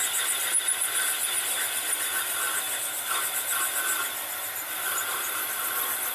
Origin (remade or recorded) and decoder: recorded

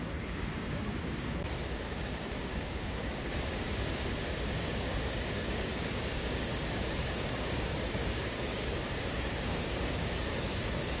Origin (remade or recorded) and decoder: remade, codec, DAC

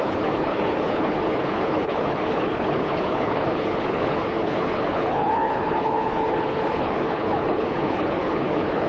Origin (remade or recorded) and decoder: remade, codec, HILCodec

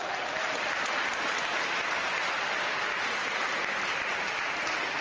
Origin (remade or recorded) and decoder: recorded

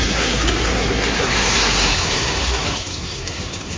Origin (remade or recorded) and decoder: remade, codec, SNAC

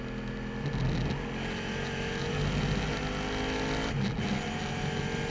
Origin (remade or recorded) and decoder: recorded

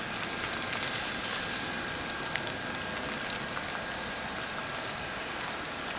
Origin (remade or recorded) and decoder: recorded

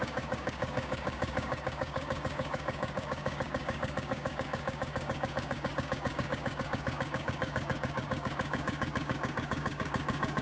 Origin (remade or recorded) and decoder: remade, codec, DAC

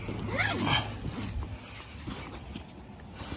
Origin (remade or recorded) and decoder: recorded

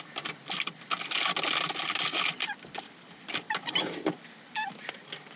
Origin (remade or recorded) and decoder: recorded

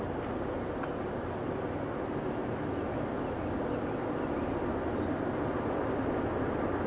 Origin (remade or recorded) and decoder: recorded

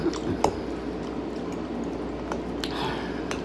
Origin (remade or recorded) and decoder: recorded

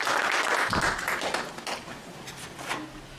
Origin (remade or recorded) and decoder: recorded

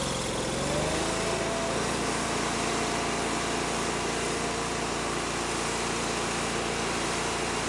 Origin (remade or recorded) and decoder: recorded